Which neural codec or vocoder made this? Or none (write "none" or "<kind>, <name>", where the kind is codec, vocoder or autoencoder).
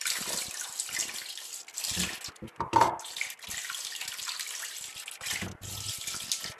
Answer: none